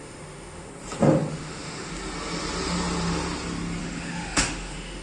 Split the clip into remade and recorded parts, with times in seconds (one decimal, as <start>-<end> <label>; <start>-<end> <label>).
0.0-0.7 remade; 0.7-1.3 recorded; 1.3-1.9 remade; 1.9-3.8 recorded; 3.8-5.0 remade